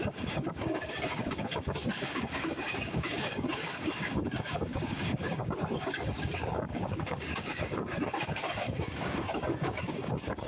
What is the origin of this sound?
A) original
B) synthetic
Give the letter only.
B